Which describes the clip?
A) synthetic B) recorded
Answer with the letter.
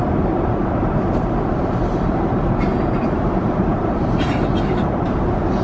A